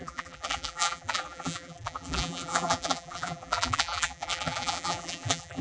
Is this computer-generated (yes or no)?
yes